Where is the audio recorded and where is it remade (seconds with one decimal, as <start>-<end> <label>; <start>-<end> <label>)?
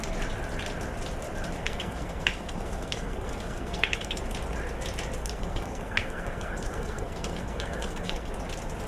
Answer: 0.0-1.6 recorded; 1.6-4.2 remade; 4.2-5.2 recorded; 5.2-8.3 remade; 8.3-8.9 recorded